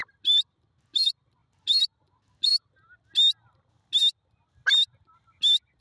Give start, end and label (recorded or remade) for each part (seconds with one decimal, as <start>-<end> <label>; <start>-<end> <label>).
0.0-5.8 recorded